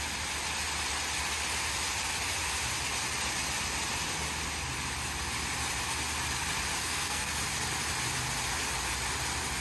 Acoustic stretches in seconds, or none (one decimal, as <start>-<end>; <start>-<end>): 0.0-6.8; 7.3-9.6